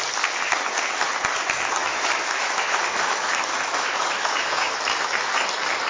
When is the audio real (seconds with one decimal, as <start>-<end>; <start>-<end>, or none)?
0.0-1.8; 5.3-5.9